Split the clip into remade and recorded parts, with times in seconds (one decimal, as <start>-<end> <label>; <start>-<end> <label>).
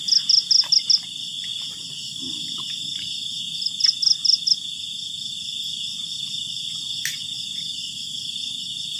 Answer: 0.0-9.0 recorded